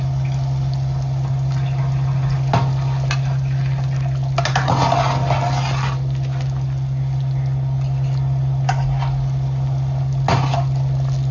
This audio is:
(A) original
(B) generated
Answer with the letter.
A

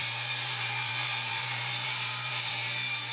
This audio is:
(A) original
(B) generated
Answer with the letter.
B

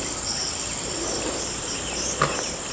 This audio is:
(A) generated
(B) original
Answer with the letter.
B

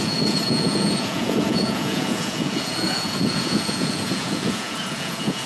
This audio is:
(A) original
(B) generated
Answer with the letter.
B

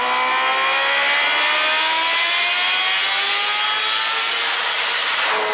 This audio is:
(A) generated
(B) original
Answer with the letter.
B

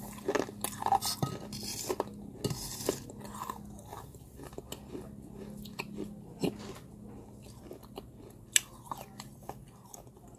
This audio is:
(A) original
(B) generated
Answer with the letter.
A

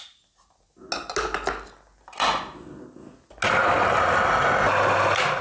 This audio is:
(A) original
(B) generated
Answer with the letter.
A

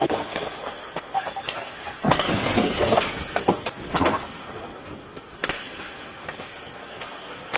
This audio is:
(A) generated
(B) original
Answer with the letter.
A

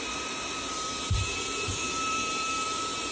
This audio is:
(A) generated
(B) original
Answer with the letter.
A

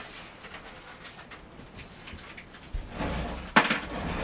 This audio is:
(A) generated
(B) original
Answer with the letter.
B